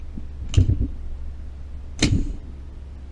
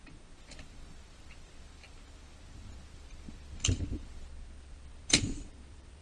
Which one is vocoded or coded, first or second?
second